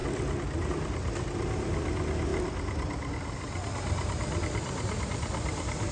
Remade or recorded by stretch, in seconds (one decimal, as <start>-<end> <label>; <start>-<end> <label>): 0.0-5.9 recorded